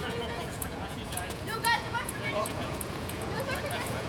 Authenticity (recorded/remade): remade